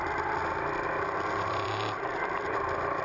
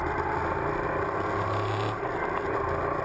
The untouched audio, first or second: second